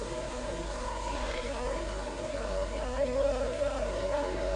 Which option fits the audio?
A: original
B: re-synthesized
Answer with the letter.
B